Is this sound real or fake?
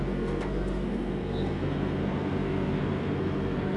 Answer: fake